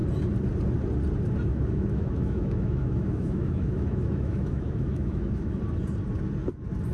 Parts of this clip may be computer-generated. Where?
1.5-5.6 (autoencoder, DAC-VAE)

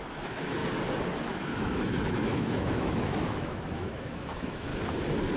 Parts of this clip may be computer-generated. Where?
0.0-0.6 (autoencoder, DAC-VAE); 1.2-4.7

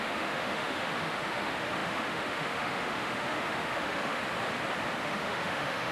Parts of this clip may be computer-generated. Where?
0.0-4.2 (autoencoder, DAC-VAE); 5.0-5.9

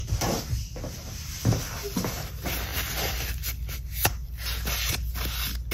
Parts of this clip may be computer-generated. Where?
none